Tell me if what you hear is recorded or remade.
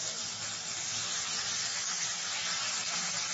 recorded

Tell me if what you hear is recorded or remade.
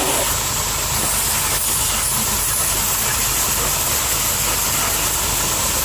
recorded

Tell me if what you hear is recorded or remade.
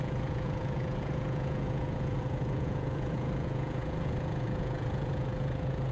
remade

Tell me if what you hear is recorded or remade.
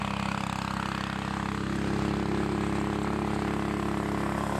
recorded